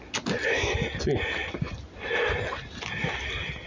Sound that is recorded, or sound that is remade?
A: recorded